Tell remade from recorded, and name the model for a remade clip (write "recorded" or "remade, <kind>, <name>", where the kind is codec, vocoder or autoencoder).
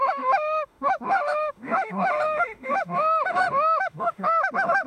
remade, autoencoder, DAC-VAE